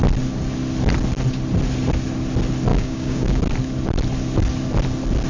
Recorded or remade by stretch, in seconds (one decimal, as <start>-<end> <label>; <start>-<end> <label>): 0.0-2.7 recorded; 2.7-3.4 remade; 3.4-5.3 recorded